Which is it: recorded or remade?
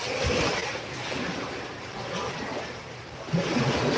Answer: recorded